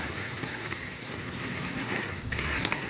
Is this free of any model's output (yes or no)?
no